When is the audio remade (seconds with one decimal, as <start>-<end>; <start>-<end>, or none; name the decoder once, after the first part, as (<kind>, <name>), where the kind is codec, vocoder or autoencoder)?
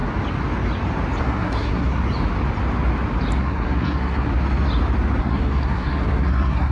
1.2-2.0 (codec, SNAC); 3.4-4.3; 5.2-6.7